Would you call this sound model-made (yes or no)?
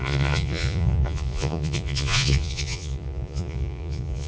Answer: yes